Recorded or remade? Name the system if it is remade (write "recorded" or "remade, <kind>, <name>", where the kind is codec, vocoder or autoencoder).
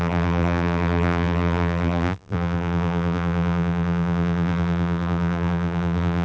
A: remade, vocoder, BigVGAN v2